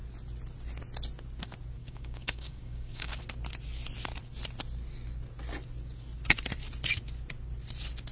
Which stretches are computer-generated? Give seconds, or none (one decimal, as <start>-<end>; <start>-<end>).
1.8-3.2